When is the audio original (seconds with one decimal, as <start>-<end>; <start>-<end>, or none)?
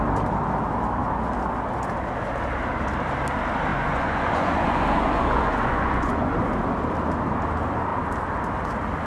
0.0-3.7; 6.3-9.1